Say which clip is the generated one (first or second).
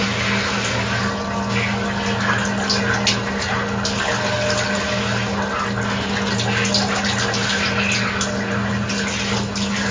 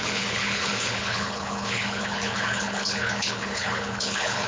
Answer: second